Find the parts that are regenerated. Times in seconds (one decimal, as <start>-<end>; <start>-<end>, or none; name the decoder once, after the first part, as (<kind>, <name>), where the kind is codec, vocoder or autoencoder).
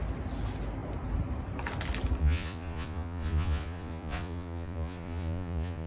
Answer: 2.2-5.9 (vocoder, Vocos)